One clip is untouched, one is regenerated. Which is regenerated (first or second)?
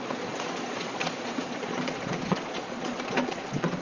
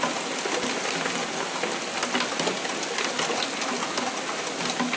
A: first